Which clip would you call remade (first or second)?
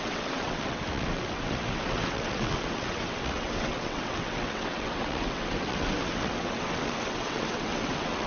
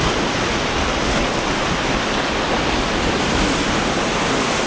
first